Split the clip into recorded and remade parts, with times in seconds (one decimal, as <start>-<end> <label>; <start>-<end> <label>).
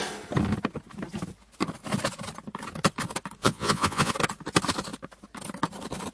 0.0-3.4 recorded; 3.4-4.1 remade; 4.1-6.1 recorded